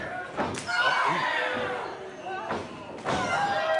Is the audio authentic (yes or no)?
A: yes